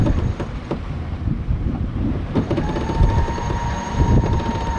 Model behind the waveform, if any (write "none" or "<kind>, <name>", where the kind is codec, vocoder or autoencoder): vocoder, BigVGAN v2